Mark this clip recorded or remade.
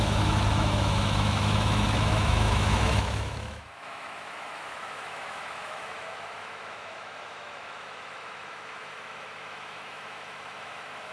remade